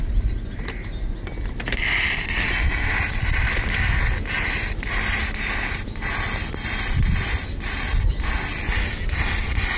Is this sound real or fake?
real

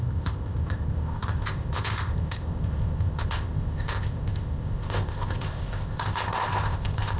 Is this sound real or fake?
fake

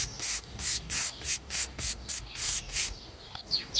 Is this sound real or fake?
fake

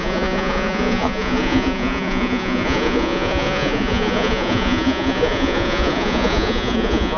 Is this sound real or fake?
fake